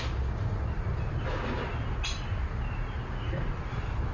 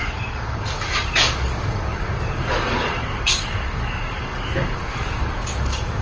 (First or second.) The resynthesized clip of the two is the second